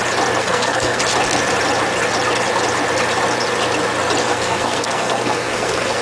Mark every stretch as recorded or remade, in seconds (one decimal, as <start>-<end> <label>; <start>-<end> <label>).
0.0-0.4 recorded; 0.4-1.0 remade; 1.0-4.2 recorded; 4.2-6.0 remade